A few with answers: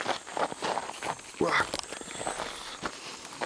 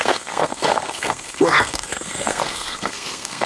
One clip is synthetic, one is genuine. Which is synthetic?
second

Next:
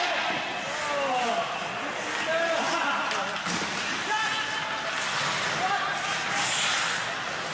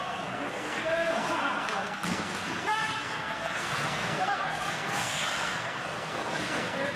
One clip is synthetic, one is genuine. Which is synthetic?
second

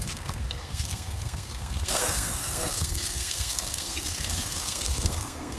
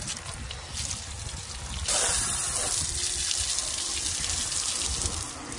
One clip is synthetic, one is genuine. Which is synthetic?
first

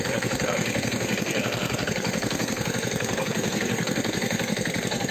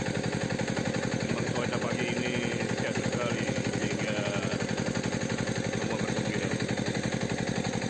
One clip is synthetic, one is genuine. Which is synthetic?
first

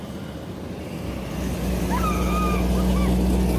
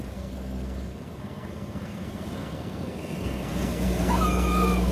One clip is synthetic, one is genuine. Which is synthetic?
second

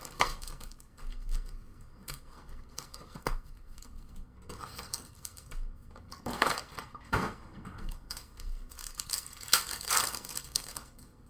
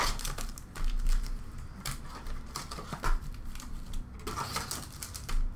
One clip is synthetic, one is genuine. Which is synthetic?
first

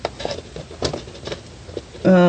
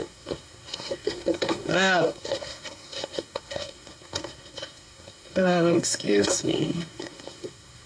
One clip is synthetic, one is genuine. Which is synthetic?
second